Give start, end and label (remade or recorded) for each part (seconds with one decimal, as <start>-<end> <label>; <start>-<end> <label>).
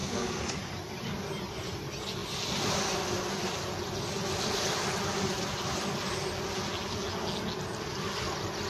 0.0-0.6 remade; 0.6-8.7 recorded